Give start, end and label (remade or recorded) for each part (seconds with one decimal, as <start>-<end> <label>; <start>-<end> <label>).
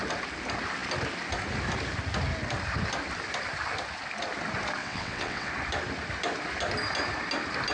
0.0-4.8 recorded; 4.8-5.5 remade; 5.5-7.7 recorded